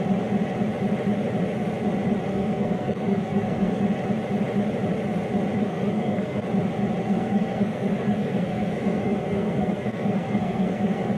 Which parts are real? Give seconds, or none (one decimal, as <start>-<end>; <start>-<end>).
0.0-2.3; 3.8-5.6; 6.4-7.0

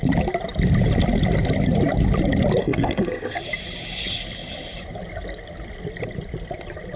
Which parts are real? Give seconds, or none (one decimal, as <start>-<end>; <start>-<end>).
0.0-2.6; 3.4-7.0

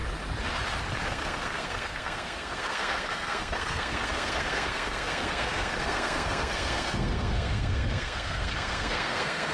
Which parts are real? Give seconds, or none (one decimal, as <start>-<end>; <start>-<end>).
0.0-1.0

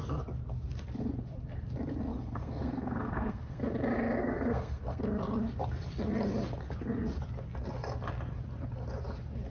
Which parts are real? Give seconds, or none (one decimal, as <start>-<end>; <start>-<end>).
0.0-2.1; 3.6-4.2; 5.0-9.5

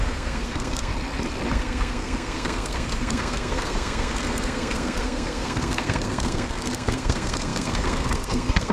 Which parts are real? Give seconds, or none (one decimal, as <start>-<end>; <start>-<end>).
0.9-1.5

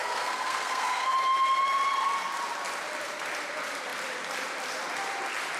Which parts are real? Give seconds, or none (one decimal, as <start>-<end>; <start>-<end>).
1.1-5.6

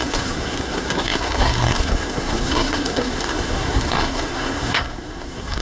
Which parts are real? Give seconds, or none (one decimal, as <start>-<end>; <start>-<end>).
none

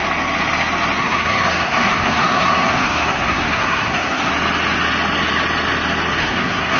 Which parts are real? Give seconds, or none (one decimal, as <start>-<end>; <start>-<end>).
0.0-1.0; 4.3-6.2